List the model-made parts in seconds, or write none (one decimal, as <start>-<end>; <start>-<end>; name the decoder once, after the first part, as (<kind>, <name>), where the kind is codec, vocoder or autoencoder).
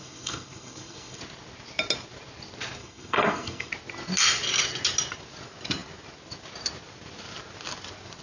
0.0-1.2 (codec, SNAC); 2.8-3.7